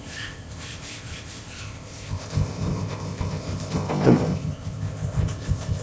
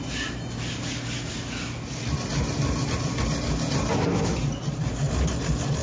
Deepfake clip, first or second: first